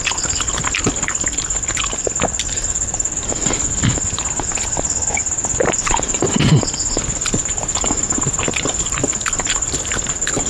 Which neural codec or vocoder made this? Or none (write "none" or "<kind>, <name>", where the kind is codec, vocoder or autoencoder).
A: none